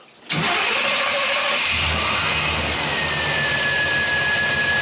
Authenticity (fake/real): real